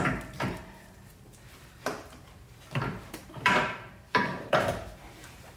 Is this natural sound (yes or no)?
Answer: no